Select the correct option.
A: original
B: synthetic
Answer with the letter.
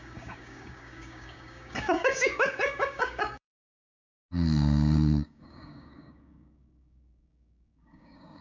B